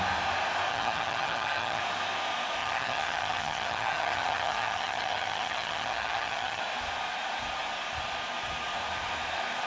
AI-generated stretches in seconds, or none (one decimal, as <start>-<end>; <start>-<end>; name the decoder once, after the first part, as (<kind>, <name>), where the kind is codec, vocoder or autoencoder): 0.7-1.8 (vocoder, HiFi-GAN); 2.6-6.6